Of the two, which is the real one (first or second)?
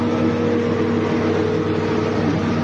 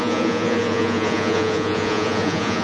first